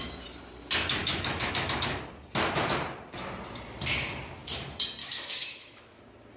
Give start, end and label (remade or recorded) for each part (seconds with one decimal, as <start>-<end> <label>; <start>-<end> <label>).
0.0-1.0 recorded; 1.0-2.0 remade; 2.0-5.0 recorded; 5.0-6.0 remade; 6.0-6.4 recorded

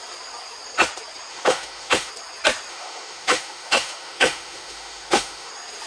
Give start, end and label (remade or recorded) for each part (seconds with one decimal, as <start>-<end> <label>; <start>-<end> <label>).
0.0-1.3 recorded; 1.3-2.1 remade; 2.1-2.7 recorded; 2.7-5.5 remade; 5.5-5.9 recorded

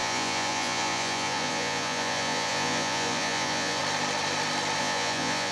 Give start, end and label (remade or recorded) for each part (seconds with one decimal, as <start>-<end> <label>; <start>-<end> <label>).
0.0-3.8 remade; 3.8-4.8 recorded; 4.8-5.5 remade

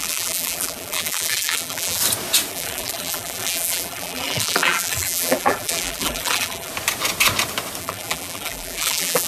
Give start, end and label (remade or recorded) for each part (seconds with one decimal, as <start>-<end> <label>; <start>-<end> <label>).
0.0-2.0 remade; 2.0-2.5 recorded; 2.5-6.7 remade; 6.7-7.8 recorded; 7.8-9.3 remade

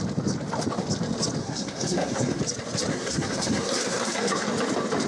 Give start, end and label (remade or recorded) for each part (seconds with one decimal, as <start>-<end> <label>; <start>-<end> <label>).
0.0-1.4 recorded; 1.4-2.4 remade; 2.4-2.9 recorded; 2.9-4.5 remade; 4.5-5.1 recorded